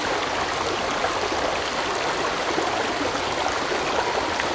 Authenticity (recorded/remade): recorded